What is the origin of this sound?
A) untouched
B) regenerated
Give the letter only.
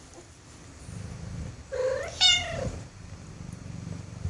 A